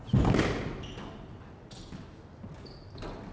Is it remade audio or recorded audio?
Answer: recorded